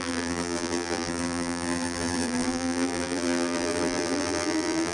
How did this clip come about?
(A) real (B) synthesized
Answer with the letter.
B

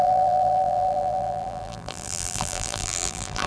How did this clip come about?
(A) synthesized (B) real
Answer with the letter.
A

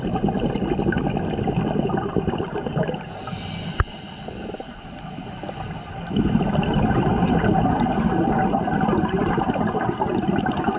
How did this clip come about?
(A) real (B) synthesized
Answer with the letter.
A